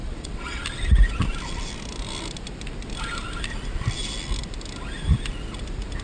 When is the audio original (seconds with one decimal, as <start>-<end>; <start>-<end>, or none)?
0.6-6.0

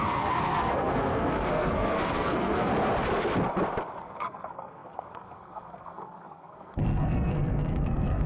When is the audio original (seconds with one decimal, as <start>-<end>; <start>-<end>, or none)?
2.7-4.0

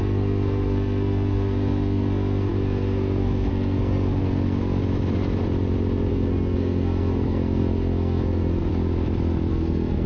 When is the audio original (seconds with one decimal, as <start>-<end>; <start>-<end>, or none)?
4.8-6.1; 8.7-9.5

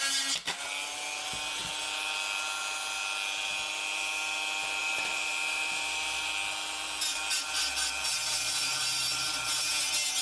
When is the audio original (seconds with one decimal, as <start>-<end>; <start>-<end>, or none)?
0.0-4.8; 6.3-8.1; 9.7-10.2

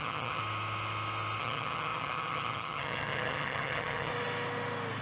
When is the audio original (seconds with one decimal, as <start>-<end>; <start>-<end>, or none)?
0.4-1.4; 4.1-5.0

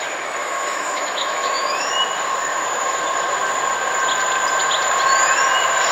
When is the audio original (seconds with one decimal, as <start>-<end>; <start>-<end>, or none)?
0.0-0.4; 1.9-2.5; 3.0-5.9

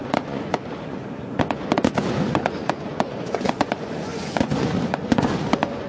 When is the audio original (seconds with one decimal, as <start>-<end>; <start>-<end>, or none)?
none